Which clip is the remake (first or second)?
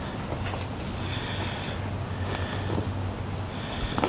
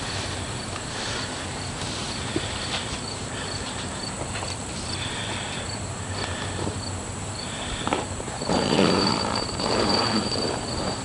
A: second